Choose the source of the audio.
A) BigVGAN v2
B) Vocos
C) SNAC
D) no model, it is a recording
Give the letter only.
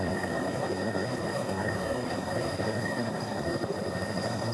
C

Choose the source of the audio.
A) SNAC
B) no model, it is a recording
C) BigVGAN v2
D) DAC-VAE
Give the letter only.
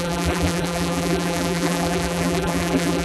C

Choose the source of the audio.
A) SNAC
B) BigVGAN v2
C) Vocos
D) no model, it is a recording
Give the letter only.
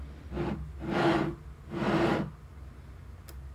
D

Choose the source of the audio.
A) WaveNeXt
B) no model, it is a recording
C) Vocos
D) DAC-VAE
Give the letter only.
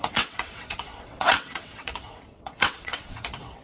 A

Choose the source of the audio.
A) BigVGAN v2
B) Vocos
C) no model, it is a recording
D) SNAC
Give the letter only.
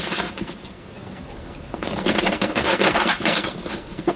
D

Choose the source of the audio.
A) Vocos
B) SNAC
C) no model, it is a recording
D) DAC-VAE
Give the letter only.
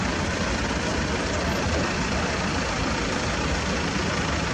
C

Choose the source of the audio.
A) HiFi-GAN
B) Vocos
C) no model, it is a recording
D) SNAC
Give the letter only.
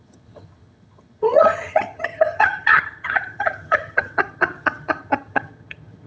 A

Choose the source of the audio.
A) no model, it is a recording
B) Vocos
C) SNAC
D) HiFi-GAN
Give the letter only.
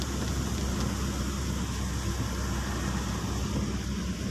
A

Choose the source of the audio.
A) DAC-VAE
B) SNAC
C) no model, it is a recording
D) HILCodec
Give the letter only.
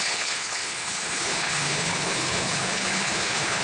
D